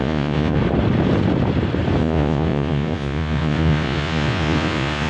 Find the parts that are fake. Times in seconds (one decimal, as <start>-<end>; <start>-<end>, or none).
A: 0.0-0.6; 2.0-5.1